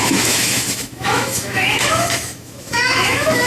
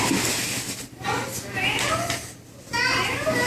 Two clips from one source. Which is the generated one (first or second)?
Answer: first